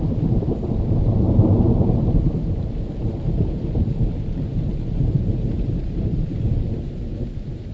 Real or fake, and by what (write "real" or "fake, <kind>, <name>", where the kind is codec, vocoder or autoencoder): fake, vocoder, BigVGAN v2